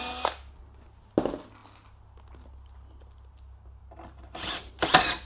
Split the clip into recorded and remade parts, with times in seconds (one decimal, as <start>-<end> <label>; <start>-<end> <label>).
0.0-5.2 recorded